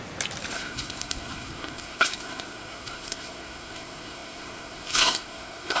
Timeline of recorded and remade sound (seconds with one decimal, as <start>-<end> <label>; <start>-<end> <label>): 0.0-0.5 recorded; 0.5-5.8 remade